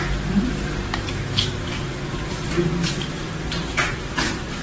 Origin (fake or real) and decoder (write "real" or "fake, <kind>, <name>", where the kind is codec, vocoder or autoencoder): fake, vocoder, BigVGAN v2